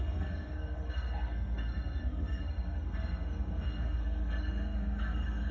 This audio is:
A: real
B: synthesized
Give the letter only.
B